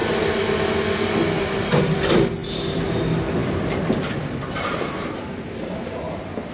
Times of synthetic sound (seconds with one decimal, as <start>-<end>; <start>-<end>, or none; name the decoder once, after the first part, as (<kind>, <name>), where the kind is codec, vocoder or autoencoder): none